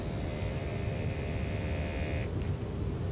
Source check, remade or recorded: recorded